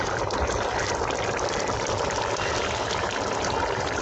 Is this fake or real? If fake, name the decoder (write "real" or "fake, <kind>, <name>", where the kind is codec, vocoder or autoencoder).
real